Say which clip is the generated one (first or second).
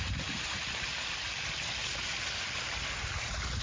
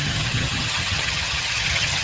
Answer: second